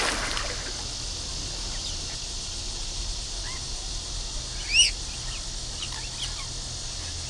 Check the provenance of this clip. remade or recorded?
recorded